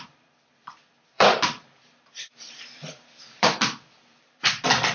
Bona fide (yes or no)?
no